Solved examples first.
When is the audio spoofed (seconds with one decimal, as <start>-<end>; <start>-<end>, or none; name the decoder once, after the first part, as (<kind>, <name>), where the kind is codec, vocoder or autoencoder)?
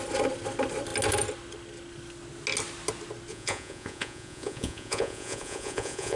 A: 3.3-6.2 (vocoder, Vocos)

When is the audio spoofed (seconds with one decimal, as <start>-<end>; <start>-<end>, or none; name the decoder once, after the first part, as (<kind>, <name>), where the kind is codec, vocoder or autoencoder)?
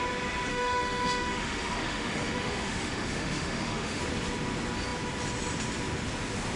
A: 0.5-4.0 (autoencoder, DAC-VAE)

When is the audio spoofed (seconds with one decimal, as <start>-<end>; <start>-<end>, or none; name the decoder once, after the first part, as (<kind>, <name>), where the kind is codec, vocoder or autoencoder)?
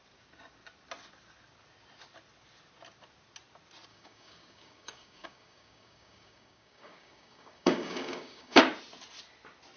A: 3.9-8.6 (codec, DAC)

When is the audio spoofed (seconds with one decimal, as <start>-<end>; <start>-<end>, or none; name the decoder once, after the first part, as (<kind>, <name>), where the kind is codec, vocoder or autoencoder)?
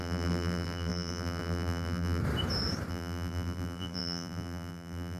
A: 0.0-2.2 (vocoder, BigVGAN v2); 2.9-5.2